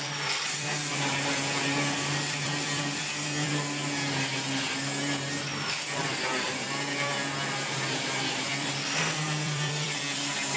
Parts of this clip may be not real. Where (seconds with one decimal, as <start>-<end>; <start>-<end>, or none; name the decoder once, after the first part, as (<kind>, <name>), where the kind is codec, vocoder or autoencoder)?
0.0-3.8 (vocoder, BigVGAN v2); 6.0-10.6